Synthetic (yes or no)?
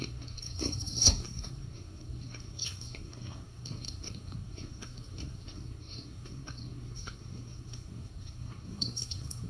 yes